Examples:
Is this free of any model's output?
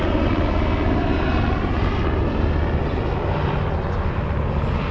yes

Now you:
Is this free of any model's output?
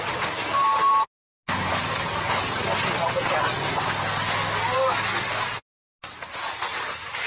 yes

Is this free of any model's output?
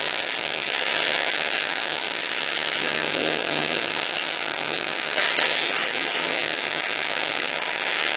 no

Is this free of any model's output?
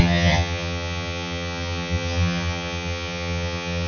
no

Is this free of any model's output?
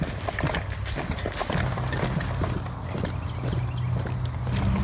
yes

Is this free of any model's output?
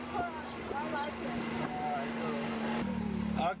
yes